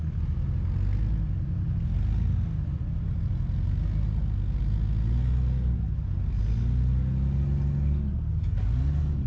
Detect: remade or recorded recorded